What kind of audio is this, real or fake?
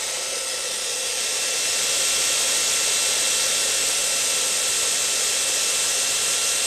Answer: real